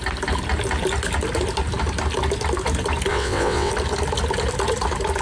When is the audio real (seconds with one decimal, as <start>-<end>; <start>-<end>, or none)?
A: 0.0-3.1; 3.7-5.2